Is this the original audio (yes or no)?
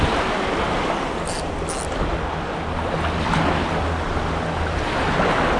yes